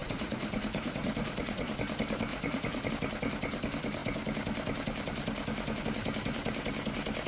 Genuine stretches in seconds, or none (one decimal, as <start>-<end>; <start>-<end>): 1.7-2.3; 2.9-7.3